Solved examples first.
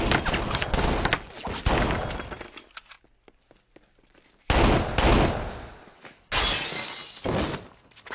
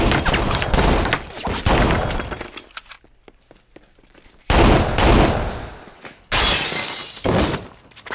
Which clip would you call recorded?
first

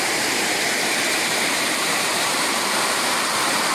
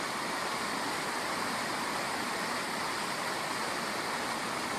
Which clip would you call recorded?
second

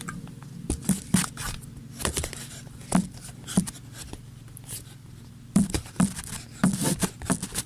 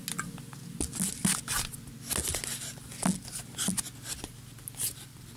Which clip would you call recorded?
second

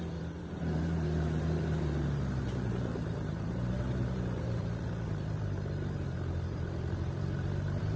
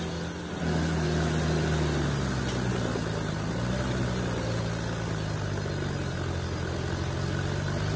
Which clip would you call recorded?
second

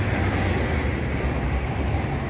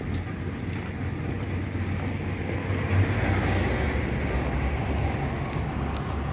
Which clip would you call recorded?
second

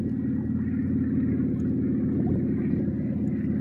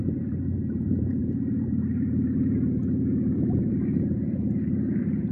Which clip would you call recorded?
first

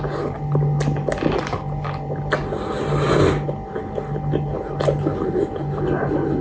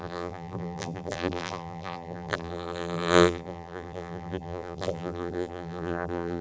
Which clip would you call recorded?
first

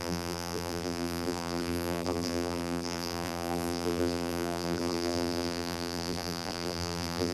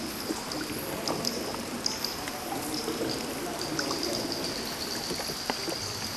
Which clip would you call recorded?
second